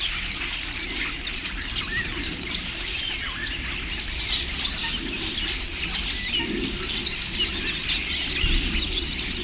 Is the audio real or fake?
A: real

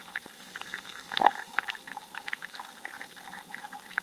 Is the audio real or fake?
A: fake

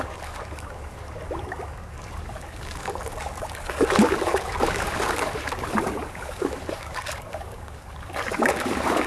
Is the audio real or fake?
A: fake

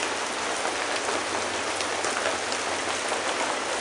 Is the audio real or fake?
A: real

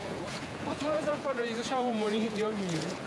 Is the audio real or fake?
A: fake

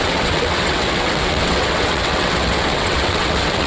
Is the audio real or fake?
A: fake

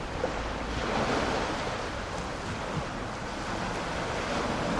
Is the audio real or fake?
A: real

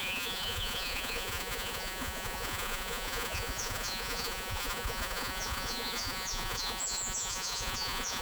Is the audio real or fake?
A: fake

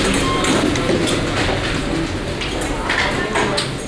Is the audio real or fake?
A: real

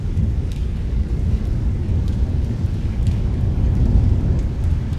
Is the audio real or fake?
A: fake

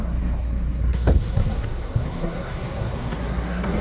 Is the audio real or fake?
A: fake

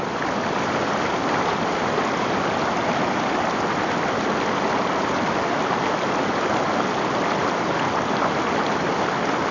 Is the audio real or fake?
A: real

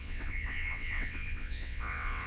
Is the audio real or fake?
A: fake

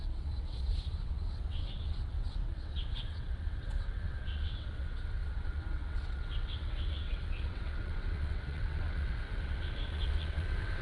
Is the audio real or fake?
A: fake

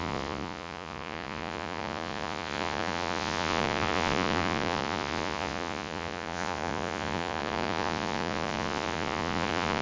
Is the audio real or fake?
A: fake